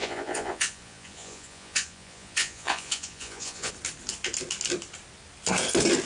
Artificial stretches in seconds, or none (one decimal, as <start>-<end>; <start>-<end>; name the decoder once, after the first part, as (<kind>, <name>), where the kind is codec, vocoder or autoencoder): 0.0-3.7 (vocoder, Vocos)